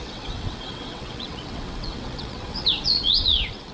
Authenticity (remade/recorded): remade